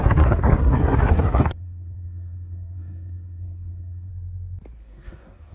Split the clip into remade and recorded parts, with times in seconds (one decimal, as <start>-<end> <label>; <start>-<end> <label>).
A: 0.0-4.1 remade; 4.1-4.8 recorded; 4.8-5.5 remade

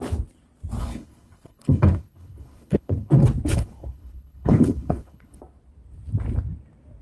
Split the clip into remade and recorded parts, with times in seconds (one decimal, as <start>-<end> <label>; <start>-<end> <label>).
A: 0.0-0.8 recorded; 0.8-3.1 remade; 3.1-3.5 recorded; 3.5-5.4 remade; 5.4-7.0 recorded

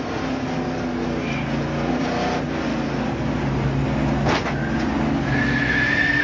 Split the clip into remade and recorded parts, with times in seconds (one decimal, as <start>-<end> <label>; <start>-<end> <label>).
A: 0.0-6.2 recorded

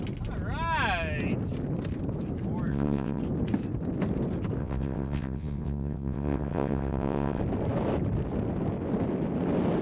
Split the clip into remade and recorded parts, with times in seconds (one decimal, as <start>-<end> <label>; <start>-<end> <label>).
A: 0.0-2.7 recorded; 2.7-3.2 remade; 3.2-4.6 recorded; 4.6-7.4 remade; 7.4-9.8 recorded

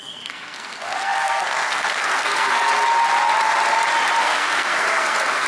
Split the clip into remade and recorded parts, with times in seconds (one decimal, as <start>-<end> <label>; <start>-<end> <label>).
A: 0.0-2.7 remade; 2.7-4.2 recorded; 4.2-5.5 remade

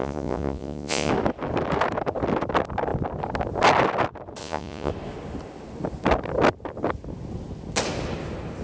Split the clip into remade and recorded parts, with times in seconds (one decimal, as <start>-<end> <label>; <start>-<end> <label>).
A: 0.0-1.1 remade; 1.1-4.4 recorded; 4.4-4.9 remade; 4.9-8.6 recorded

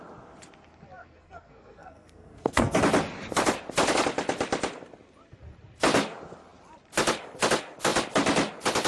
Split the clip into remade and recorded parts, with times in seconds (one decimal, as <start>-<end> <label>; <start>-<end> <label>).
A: 0.0-1.0 recorded; 1.0-2.8 remade; 2.8-8.9 recorded

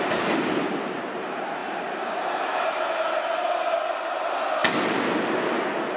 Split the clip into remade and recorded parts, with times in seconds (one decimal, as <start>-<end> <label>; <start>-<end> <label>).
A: 0.0-6.0 recorded